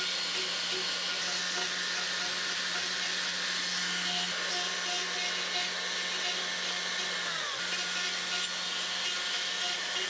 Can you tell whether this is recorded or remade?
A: recorded